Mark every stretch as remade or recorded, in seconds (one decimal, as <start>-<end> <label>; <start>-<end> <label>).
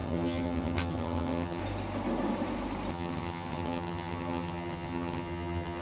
0.0-1.6 remade; 1.6-2.9 recorded; 2.9-5.8 remade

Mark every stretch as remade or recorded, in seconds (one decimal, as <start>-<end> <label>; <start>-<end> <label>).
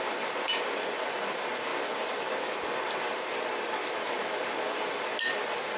0.0-5.1 remade; 5.1-5.8 recorded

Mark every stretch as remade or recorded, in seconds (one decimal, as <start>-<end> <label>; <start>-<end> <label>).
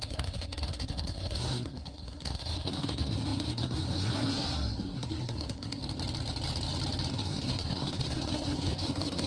0.0-5.8 remade; 5.8-7.1 recorded; 7.1-9.3 remade